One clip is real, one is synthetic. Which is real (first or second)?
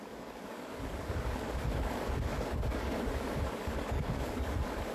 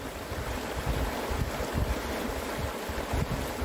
second